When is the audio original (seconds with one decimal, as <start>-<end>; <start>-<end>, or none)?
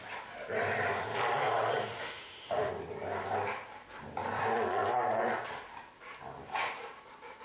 0.0-1.9; 2.7-7.4